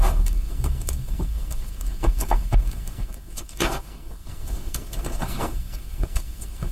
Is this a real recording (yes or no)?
no